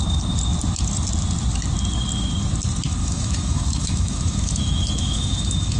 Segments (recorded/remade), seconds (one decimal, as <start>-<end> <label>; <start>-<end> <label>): 0.0-3.0 recorded; 3.0-5.8 remade